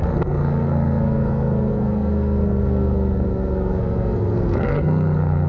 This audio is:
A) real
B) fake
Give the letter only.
B